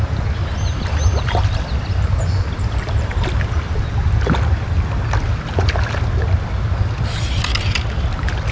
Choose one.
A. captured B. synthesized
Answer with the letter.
A